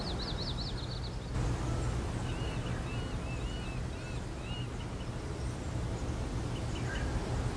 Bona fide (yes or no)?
yes